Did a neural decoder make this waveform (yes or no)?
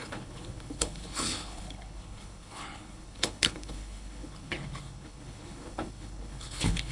yes